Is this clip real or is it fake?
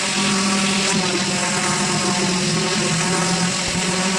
real